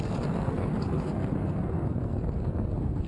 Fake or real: fake